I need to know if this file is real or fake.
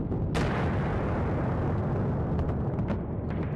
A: real